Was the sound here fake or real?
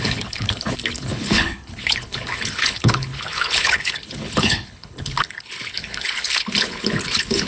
fake